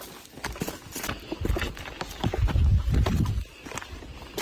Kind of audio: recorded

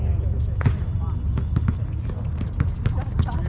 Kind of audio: recorded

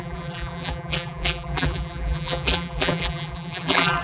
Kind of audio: remade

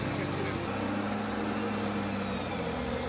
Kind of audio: recorded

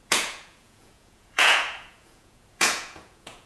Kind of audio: remade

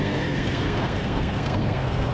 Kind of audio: remade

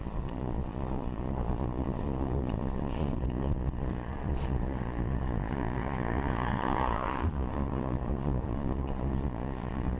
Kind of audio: remade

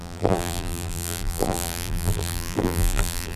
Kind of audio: remade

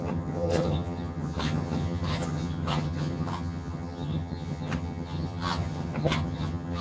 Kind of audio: remade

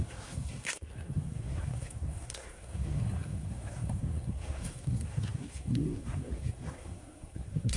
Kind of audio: remade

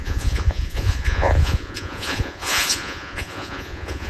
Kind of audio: remade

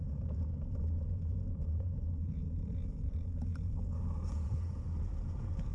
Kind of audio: remade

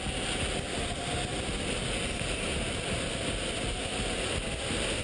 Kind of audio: recorded